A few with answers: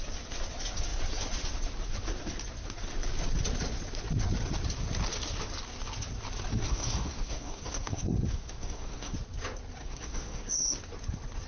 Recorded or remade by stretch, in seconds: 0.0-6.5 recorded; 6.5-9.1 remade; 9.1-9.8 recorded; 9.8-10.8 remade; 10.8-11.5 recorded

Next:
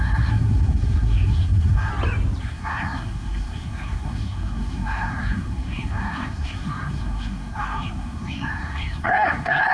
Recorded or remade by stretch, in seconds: 0.0-1.9 remade; 1.9-2.4 recorded; 2.4-9.7 remade

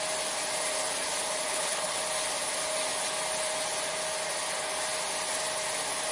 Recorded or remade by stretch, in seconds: 0.0-1.5 recorded; 1.5-2.0 remade; 2.0-6.1 recorded

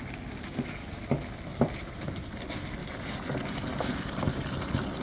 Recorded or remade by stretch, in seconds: 0.0-1.5 recorded; 1.5-2.4 remade; 2.4-2.8 recorded; 2.8-4.4 remade; 4.4-5.0 recorded

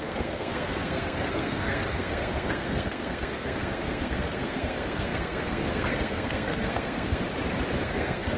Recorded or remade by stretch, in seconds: 0.0-7.2 remade; 7.2-7.8 recorded; 7.8-8.4 remade